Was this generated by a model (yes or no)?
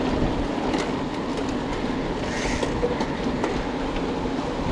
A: no